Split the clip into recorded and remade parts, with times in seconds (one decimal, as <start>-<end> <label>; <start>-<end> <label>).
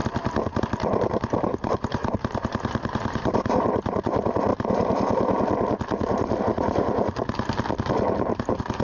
0.0-0.6 recorded; 0.6-4.5 remade; 4.5-6.4 recorded; 6.4-7.2 remade; 7.2-7.9 recorded; 7.9-8.8 remade